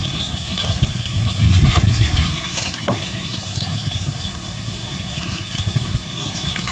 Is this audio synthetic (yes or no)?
yes